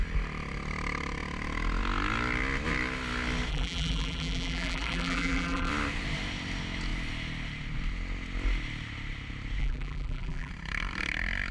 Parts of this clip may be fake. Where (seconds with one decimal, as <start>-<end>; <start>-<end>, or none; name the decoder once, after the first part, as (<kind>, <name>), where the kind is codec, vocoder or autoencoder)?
3.5-5.7 (vocoder, BigVGAN v2); 9.6-10.5